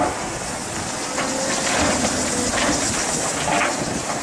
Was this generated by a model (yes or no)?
no